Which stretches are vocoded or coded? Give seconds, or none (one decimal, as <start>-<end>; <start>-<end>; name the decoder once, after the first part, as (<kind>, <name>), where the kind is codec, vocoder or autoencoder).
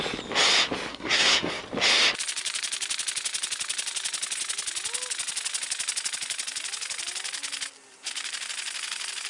0.9-1.6 (codec, SNAC)